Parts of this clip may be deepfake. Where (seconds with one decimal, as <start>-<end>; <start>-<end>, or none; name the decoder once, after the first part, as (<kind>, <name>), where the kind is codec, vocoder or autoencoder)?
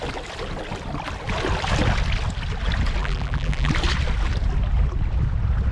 3.0-3.7 (vocoder, BigVGAN v2)